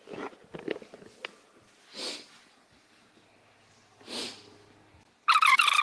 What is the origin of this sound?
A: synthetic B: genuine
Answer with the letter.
B